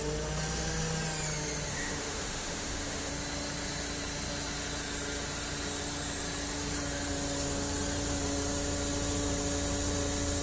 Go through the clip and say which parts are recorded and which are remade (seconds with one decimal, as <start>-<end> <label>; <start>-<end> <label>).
0.0-1.7 recorded; 1.7-3.1 remade; 3.1-10.4 recorded